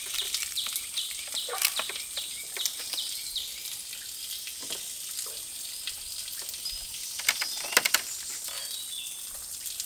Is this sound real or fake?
real